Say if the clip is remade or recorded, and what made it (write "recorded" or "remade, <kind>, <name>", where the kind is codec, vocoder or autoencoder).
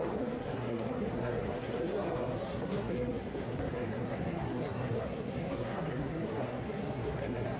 remade, codec, SNAC